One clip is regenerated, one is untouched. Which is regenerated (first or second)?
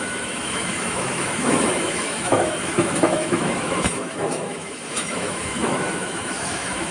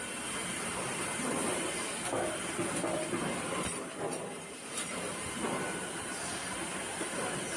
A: first